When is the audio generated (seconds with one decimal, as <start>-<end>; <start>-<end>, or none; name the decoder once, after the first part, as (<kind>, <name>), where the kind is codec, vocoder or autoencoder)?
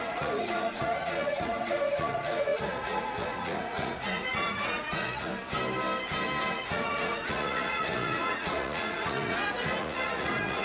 0.0-5.3 (vocoder, Vocos); 6.5-10.6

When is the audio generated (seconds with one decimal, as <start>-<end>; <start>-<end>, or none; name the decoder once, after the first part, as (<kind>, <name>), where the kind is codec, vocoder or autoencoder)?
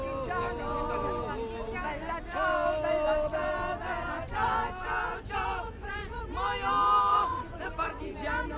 5.1-6.2 (vocoder, Vocos); 7.1-8.0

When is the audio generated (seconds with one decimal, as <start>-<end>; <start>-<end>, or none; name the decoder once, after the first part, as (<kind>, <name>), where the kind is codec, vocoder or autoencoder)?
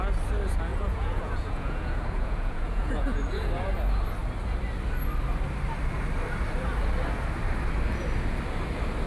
0.7-3.5 (vocoder, Vocos)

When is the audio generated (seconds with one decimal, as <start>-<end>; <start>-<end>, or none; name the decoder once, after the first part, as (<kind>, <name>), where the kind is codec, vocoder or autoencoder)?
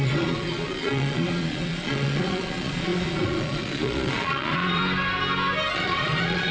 0.0-4.8 (vocoder, Vocos); 5.7-6.5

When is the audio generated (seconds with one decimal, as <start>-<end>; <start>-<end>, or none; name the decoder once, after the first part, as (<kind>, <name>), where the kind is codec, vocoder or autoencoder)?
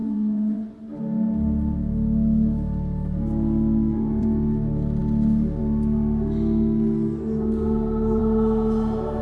0.0-0.8 (vocoder, Vocos)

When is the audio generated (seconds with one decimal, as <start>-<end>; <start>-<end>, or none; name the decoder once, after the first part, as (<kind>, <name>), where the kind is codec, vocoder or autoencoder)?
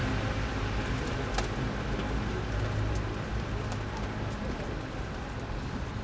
none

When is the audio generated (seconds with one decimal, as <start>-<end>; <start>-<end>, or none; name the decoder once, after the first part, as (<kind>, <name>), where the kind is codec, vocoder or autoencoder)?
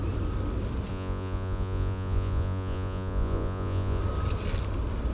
0.9-4.0 (vocoder, Vocos)